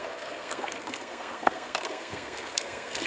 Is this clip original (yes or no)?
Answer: no